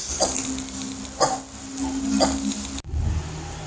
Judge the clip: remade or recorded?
recorded